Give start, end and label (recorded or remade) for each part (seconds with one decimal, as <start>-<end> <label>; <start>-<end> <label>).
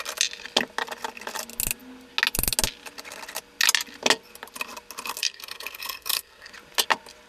0.0-5.2 recorded; 5.2-6.5 remade; 6.5-7.3 recorded